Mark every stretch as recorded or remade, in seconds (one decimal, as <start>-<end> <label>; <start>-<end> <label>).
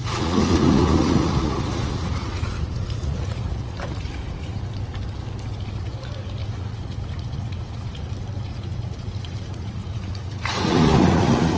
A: 0.0-4.6 remade; 4.6-6.4 recorded; 6.4-8.1 remade; 8.1-8.5 recorded; 8.5-11.6 remade